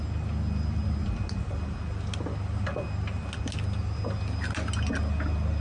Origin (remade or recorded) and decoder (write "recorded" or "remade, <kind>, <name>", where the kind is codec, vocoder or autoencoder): recorded